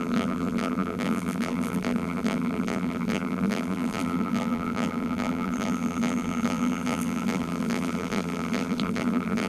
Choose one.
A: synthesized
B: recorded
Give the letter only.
A